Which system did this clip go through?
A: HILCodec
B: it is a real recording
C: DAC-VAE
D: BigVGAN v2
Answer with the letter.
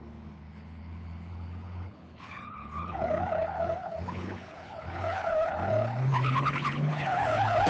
A